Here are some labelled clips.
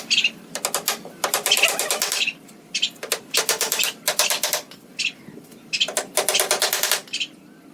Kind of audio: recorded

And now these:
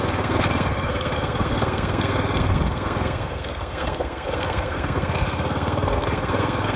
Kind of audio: remade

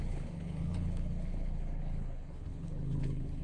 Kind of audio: remade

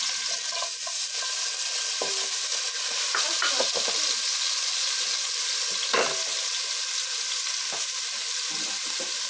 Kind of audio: recorded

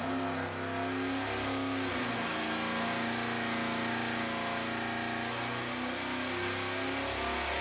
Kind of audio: recorded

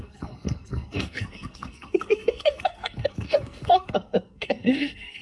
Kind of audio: remade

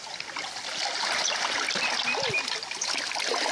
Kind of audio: recorded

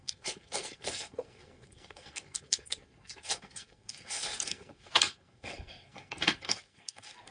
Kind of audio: remade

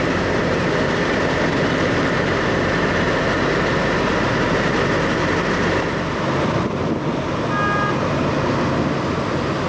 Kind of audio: recorded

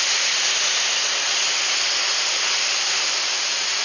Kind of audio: recorded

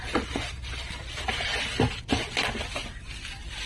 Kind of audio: recorded